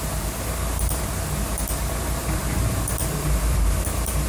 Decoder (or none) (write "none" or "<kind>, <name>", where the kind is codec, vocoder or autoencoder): none